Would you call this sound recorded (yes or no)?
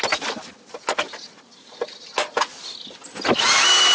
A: yes